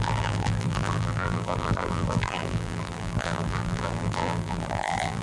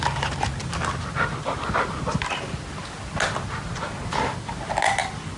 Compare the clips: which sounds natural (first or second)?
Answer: second